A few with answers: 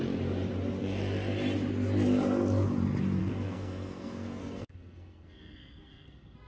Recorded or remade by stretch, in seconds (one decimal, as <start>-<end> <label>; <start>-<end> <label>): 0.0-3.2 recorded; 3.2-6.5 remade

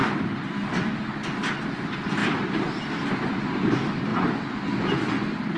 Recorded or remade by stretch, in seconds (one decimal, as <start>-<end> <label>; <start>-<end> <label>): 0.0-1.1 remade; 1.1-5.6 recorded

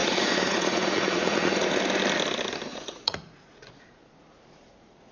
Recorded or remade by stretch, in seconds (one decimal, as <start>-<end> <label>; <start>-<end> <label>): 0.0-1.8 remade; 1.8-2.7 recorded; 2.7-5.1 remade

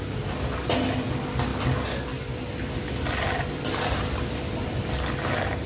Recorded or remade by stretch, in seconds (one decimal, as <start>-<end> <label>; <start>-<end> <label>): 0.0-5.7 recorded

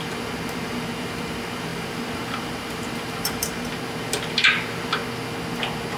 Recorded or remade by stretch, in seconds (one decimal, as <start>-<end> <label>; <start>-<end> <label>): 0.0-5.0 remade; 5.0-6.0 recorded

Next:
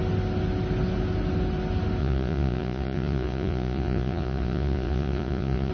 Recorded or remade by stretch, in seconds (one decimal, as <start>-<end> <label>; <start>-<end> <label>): 0.0-2.0 recorded; 2.0-5.7 remade

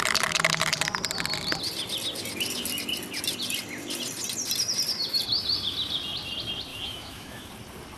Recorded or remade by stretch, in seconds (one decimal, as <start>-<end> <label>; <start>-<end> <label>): 0.0-6.7 recorded; 6.7-7.5 remade; 7.5-8.0 recorded